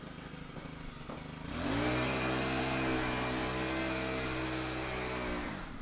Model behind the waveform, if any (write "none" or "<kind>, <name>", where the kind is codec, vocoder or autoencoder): none